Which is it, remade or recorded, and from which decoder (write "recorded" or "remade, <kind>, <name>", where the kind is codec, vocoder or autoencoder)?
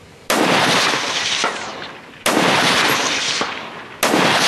recorded